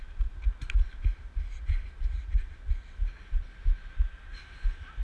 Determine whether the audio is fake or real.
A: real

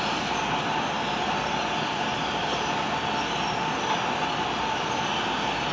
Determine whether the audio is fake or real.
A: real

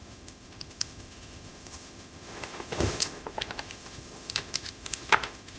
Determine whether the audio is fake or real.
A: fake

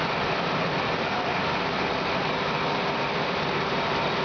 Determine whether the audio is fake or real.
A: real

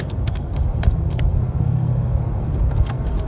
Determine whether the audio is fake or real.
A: fake